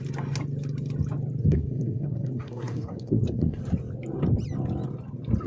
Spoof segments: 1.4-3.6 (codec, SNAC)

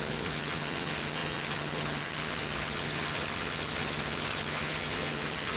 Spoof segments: 0.0-5.6 (vocoder, HiFi-GAN)